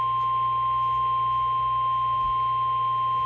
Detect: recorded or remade recorded